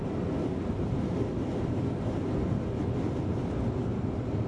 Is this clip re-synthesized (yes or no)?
no